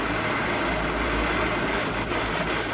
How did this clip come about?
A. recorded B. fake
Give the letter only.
A